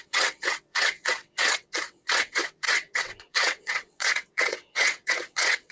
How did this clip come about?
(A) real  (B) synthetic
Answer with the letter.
B